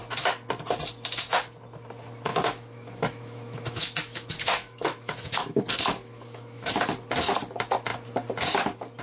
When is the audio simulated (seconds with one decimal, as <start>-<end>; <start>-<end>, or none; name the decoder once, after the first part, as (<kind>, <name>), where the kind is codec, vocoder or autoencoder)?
2.3-6.7 (autoencoder, DAC-VAE)